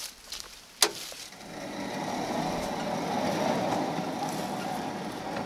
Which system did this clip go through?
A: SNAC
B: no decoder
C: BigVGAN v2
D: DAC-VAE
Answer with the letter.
B